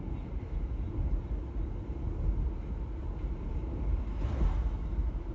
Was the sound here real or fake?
real